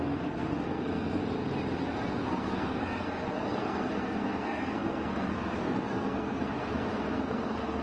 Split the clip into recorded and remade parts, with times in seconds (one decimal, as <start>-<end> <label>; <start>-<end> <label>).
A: 0.0-1.2 remade; 1.2-2.1 recorded; 2.1-7.8 remade